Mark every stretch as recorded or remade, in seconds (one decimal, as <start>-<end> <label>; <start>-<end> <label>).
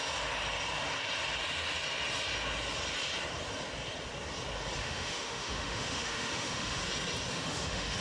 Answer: 0.0-4.8 recorded; 4.8-6.8 remade; 6.8-7.3 recorded; 7.3-8.0 remade